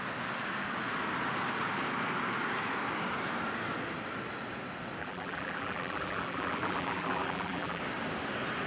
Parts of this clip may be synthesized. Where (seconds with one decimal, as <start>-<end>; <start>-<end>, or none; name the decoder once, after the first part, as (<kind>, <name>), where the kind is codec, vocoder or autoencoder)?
5.0-7.8 (vocoder, BigVGAN v2)